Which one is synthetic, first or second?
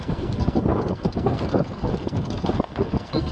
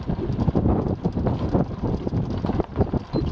first